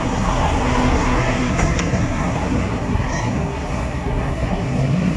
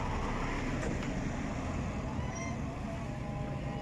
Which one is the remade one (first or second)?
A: first